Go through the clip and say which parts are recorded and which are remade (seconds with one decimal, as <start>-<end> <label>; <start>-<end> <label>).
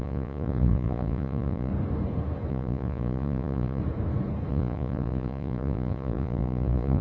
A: 0.0-1.7 remade; 1.7-2.5 recorded; 2.5-3.8 remade; 3.8-4.5 recorded; 4.5-7.0 remade